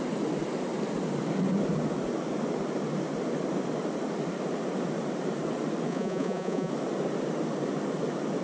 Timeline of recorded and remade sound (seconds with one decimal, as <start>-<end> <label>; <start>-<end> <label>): 0.0-5.9 recorded; 5.9-6.7 remade; 6.7-8.4 recorded